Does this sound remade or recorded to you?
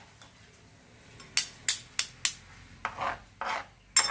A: recorded